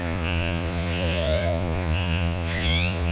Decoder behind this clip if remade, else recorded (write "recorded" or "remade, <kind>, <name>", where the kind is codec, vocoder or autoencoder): remade, vocoder, Vocos